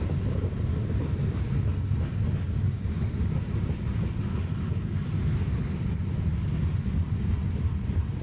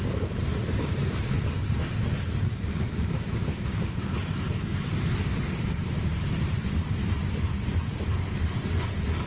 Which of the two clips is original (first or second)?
first